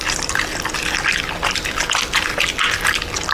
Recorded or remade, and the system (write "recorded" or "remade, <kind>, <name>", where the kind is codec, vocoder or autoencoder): recorded